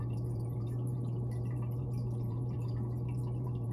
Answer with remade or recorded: remade